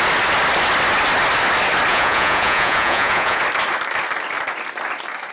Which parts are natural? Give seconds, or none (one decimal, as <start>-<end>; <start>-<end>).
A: 0.0-1.9; 3.4-5.3